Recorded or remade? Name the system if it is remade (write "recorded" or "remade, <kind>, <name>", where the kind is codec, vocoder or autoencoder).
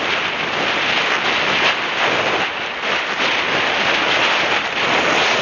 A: recorded